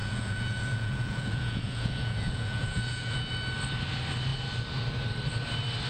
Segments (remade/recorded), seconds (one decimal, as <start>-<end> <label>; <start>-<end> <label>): 0.0-3.3 remade; 3.3-5.9 recorded